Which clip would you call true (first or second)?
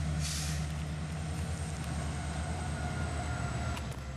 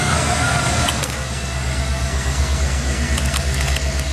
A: first